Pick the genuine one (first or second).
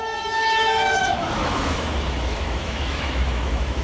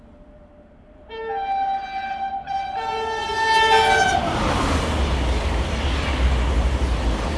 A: second